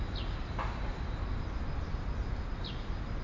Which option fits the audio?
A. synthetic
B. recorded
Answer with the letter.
B